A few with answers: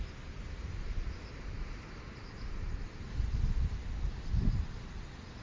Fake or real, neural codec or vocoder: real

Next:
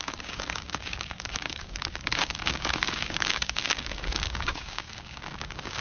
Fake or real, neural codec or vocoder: fake, codec, DAC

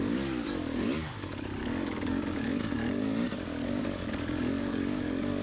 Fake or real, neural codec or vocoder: fake, codec, DAC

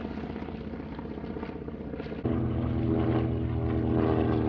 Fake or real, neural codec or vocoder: real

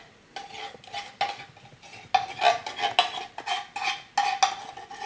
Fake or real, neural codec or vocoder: real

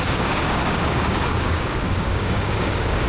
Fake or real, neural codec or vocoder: fake, codec, DAC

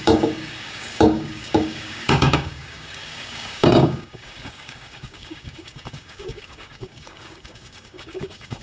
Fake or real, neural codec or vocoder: fake, codec, DAC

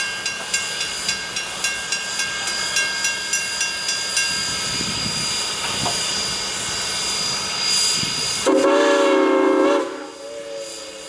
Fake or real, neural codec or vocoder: real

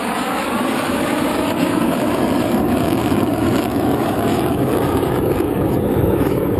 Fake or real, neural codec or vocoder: fake, codec, DAC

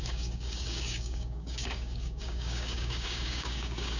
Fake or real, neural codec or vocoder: fake, codec, DAC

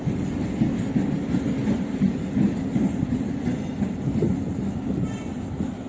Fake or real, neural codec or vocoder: real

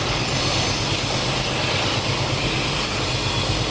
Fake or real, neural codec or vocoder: real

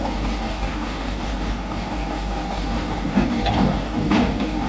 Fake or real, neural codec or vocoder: fake, codec, DAC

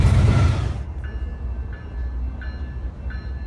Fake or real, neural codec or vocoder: real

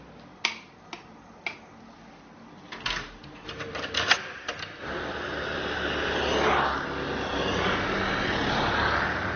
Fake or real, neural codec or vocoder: real